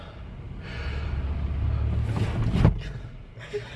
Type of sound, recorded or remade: recorded